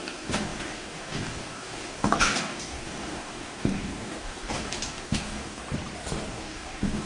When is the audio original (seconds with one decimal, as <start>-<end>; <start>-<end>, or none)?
5.6-6.3